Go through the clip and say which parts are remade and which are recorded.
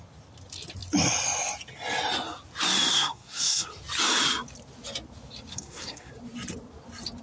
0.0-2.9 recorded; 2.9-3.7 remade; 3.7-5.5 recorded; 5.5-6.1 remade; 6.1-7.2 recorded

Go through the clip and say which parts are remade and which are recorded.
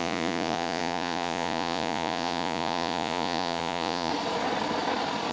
0.0-4.1 remade; 4.1-5.3 recorded